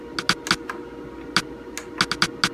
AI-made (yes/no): no